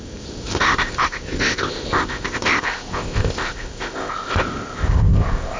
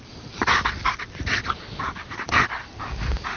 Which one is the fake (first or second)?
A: first